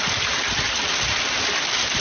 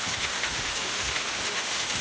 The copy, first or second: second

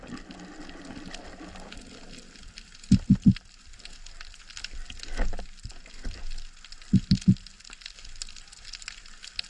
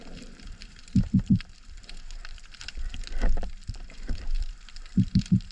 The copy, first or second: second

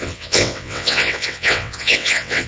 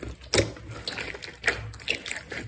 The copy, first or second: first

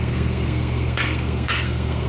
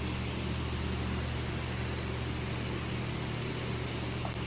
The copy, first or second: first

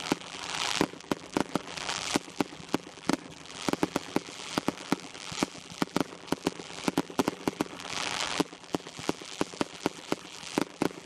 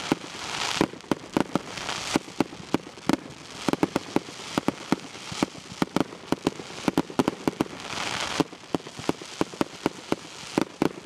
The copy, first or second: first